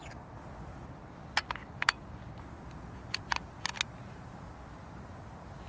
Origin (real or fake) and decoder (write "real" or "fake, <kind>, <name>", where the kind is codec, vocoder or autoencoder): real